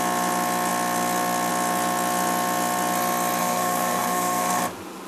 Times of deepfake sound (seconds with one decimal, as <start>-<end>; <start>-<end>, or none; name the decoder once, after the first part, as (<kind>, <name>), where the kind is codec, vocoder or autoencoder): 3.4-4.6 (codec, SNAC)